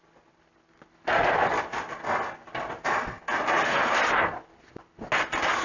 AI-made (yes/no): no